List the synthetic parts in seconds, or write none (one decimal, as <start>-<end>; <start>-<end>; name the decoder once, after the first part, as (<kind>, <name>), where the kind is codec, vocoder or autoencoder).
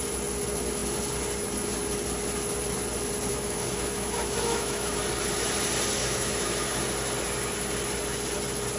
3.3-5.1 (autoencoder, DAC-VAE); 6.0-6.8